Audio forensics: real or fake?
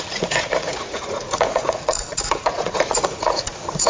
fake